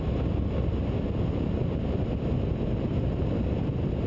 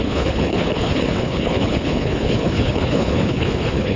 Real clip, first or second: first